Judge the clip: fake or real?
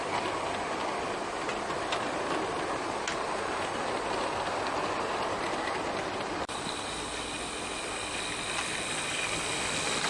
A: real